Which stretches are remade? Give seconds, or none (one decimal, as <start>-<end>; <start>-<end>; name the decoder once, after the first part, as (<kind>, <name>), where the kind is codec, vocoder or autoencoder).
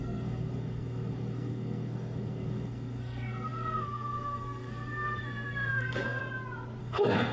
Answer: 0.0-6.2 (codec, SNAC); 6.8-7.3